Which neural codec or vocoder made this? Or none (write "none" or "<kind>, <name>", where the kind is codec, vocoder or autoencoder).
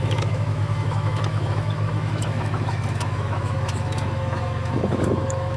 autoencoder, DAC-VAE